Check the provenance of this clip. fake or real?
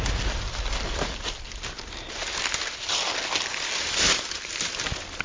real